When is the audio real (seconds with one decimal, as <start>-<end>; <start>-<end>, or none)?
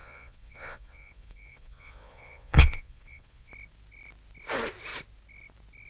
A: 3.5-5.9